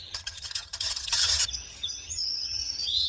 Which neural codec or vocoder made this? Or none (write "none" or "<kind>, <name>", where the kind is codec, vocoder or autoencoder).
vocoder, HiFi-GAN